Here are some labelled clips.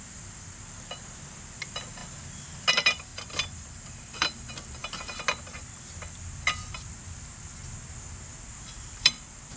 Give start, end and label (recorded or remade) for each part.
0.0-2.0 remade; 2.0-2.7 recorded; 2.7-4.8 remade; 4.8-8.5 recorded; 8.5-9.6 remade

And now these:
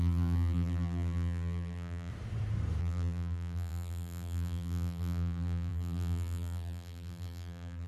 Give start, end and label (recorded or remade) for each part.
0.0-2.1 remade; 2.1-2.8 recorded; 2.8-7.9 remade

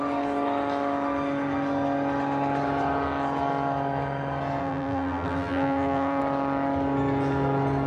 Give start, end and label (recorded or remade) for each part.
0.0-4.6 recorded; 4.6-6.2 remade; 6.2-7.9 recorded

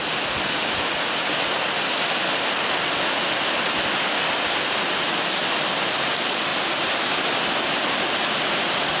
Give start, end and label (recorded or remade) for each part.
0.0-9.0 recorded